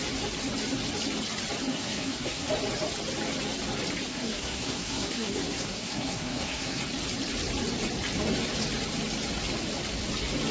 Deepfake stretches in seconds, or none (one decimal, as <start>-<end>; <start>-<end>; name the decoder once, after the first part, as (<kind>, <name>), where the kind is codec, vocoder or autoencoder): 1.7-2.5 (codec, SNAC); 4.1-6.8